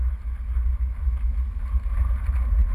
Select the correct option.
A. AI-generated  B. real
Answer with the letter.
B